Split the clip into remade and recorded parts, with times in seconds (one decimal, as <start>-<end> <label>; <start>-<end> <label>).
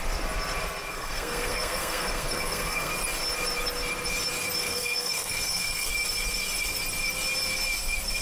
0.0-0.9 recorded; 0.9-2.9 remade; 2.9-4.6 recorded; 4.6-5.9 remade; 5.9-8.2 recorded